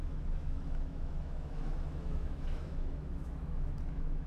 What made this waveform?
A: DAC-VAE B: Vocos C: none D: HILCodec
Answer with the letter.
A